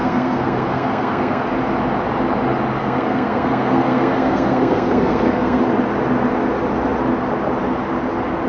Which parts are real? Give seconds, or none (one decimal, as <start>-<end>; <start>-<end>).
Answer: 1.4-2.8; 5.6-8.5